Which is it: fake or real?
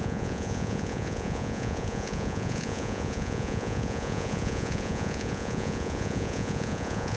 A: fake